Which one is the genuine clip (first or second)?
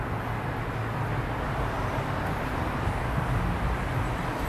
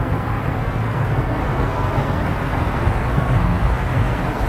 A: first